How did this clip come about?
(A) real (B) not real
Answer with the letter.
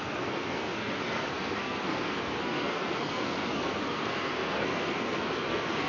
B